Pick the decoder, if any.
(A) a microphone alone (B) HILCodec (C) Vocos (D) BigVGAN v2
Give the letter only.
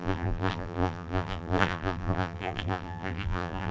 D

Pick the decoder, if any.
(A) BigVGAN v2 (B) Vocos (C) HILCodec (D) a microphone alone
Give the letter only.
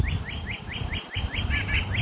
D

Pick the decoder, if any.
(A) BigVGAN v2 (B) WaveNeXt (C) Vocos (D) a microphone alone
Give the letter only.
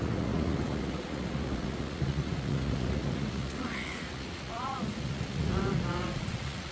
C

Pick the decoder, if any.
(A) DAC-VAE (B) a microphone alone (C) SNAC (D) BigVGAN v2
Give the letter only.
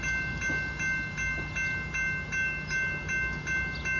B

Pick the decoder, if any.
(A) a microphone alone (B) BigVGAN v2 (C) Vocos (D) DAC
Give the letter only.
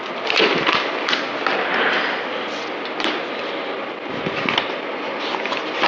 A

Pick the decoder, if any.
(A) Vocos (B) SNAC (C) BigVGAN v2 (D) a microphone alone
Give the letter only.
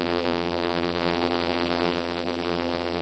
C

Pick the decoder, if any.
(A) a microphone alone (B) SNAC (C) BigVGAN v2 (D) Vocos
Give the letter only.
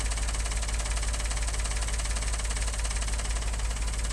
A